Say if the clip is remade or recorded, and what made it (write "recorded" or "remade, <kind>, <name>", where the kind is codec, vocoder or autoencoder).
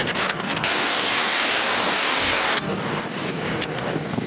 remade, codec, DAC